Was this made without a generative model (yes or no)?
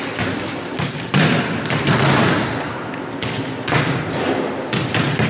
yes